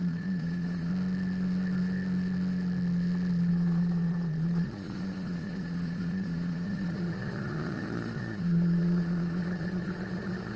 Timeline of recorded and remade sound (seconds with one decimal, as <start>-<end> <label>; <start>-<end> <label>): 0.0-0.9 remade; 0.9-3.5 recorded; 3.5-10.6 remade